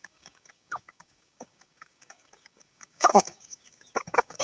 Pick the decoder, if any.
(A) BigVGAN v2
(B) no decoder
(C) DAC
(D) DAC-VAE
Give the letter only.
C